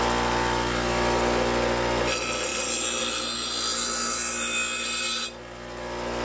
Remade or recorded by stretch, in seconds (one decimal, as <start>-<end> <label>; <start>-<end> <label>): 0.0-6.2 recorded